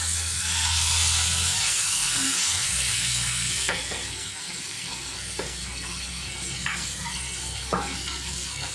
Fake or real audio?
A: fake